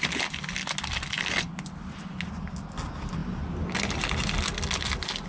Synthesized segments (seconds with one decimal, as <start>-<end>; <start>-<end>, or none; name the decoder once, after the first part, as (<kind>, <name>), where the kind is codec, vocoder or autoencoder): none